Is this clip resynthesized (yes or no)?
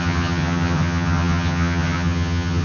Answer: yes